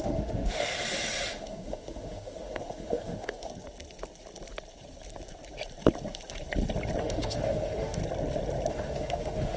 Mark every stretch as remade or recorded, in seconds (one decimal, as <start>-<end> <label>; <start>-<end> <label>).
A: 0.0-0.7 remade; 0.7-1.3 recorded; 1.3-3.5 remade; 3.5-7.0 recorded; 7.0-8.0 remade; 8.0-8.7 recorded; 8.7-9.6 remade